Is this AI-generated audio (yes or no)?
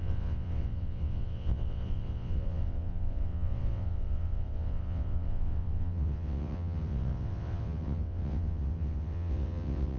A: yes